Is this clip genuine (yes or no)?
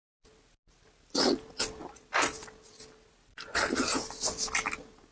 yes